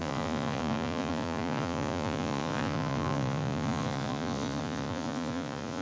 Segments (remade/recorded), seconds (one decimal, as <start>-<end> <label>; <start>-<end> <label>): 0.0-5.8 remade